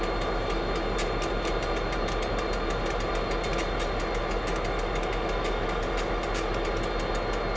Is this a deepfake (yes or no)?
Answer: no